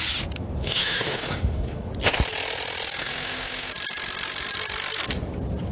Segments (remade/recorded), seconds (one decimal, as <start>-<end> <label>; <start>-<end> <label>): 0.0-0.6 recorded; 0.6-1.9 remade; 1.9-3.0 recorded; 3.0-3.7 remade; 3.7-5.7 recorded